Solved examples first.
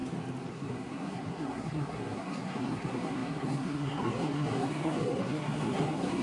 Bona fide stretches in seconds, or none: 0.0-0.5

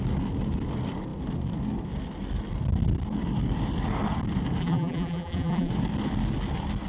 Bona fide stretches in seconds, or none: 0.0-4.6; 5.7-6.9

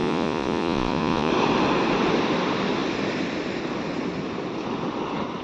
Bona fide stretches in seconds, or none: 1.3-5.4

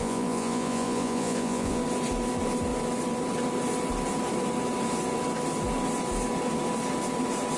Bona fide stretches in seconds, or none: 1.8-7.6

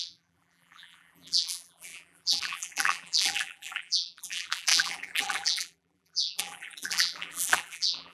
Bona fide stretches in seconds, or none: none

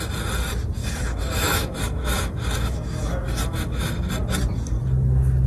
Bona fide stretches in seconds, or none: 0.0-0.8; 4.1-5.5